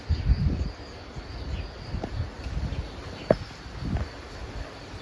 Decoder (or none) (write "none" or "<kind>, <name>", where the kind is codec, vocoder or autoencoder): none